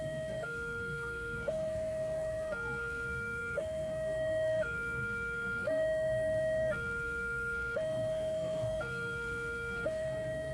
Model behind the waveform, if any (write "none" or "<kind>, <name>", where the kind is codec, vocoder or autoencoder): codec, SNAC